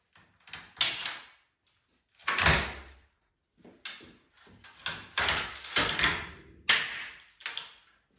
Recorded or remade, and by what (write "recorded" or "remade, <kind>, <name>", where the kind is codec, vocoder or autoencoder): recorded